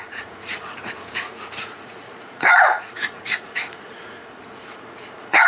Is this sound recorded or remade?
remade